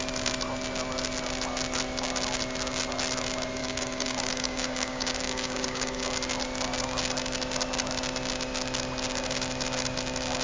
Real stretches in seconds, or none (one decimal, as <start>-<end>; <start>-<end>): 0.0-3.6; 6.0-10.4